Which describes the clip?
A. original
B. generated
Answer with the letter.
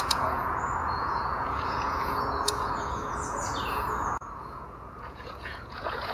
B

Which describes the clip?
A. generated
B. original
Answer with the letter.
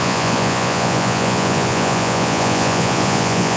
A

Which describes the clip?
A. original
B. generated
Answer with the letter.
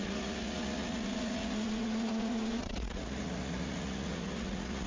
B